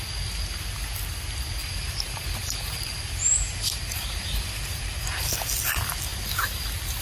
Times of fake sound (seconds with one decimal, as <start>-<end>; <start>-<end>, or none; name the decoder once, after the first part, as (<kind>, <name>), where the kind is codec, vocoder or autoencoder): 1.6-5.3 (vocoder, BigVGAN v2)